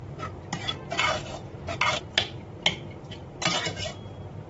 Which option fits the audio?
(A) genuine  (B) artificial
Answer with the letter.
A